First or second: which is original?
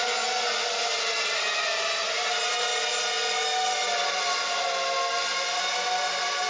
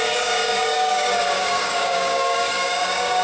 first